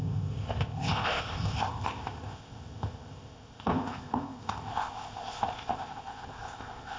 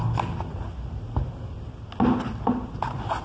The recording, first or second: second